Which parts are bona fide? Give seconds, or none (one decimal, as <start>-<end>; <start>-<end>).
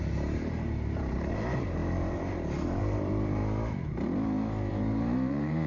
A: 3.4-4.7